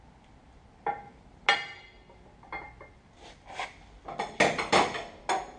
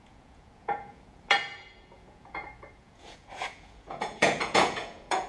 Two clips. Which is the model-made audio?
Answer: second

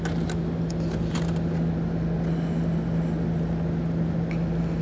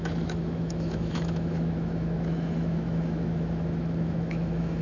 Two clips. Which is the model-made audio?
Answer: second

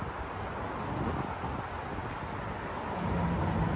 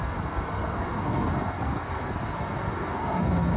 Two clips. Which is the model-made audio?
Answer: second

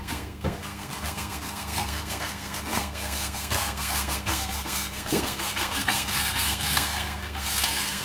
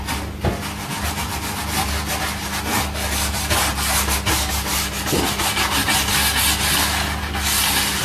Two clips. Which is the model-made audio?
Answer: first